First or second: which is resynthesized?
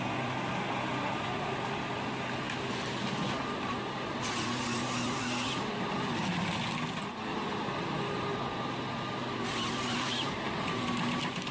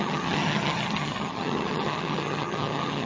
second